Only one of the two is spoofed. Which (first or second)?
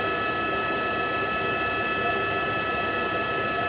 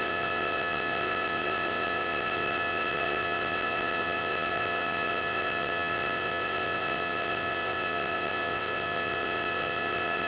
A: second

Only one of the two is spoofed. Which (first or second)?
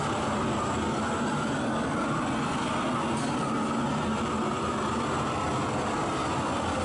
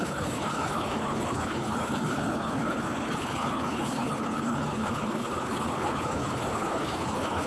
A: second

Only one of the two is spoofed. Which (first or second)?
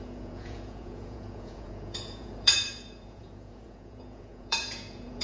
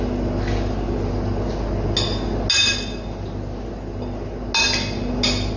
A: first